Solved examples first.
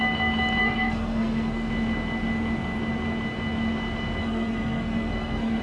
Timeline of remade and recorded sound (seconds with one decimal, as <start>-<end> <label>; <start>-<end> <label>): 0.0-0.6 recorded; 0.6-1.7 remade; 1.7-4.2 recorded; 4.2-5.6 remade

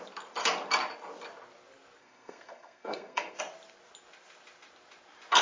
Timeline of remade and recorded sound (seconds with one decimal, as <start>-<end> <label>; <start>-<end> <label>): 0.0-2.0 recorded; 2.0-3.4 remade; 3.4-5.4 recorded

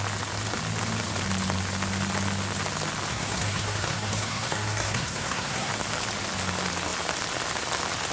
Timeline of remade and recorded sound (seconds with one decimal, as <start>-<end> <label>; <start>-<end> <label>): 0.0-3.1 recorded; 3.1-5.7 remade; 5.7-8.1 recorded

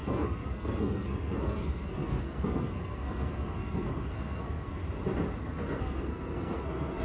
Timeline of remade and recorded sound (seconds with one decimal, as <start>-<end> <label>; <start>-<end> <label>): 0.0-4.8 remade; 4.8-5.4 recorded; 5.4-7.0 remade

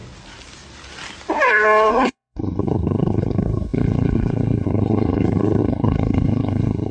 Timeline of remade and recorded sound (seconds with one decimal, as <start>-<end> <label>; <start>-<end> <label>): 0.0-1.9 recorded; 1.9-6.9 remade